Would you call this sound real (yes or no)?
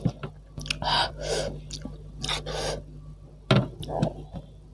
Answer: yes